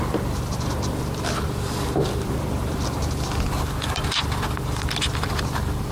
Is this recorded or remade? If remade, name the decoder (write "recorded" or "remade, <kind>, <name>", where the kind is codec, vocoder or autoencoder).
recorded